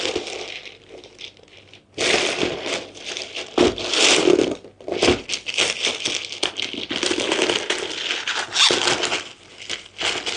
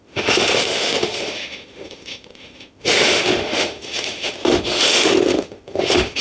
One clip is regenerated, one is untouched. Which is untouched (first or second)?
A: first